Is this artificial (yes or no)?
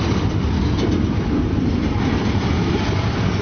no